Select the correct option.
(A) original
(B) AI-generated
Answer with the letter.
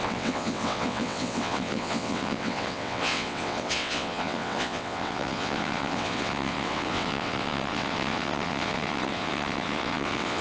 B